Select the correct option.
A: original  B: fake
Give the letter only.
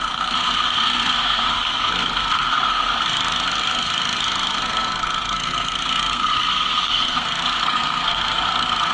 B